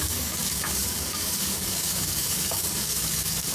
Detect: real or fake fake